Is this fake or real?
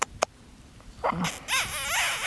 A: real